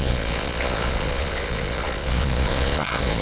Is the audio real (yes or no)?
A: no